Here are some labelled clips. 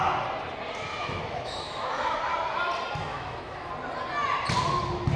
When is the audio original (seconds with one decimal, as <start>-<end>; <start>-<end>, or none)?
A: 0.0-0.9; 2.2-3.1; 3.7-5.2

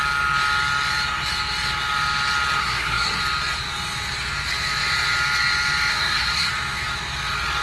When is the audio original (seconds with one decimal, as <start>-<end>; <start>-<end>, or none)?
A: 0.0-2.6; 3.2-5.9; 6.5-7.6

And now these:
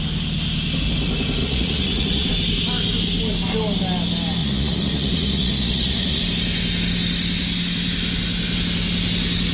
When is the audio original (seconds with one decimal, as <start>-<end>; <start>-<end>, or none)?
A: 0.0-1.4; 2.3-4.4; 6.2-9.5